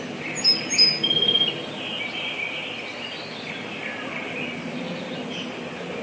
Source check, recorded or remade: recorded